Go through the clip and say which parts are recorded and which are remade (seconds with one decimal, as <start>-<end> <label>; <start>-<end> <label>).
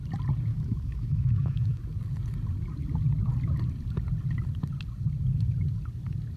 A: 0.0-0.5 recorded; 0.5-1.8 remade; 1.8-6.4 recorded